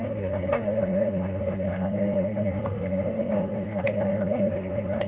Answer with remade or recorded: remade